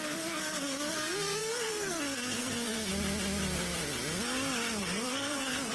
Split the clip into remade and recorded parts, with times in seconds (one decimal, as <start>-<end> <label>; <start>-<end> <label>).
0.0-2.9 remade; 2.9-4.8 recorded; 4.8-5.7 remade